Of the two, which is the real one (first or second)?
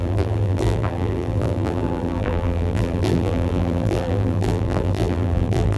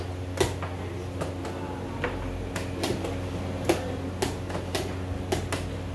second